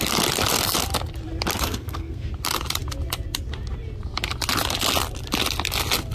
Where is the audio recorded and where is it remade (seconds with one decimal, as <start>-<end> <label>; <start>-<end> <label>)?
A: 0.0-1.5 recorded; 1.5-2.3 remade; 2.3-6.1 recorded